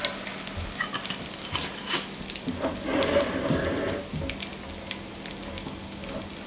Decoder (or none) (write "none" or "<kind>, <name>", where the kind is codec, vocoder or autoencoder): none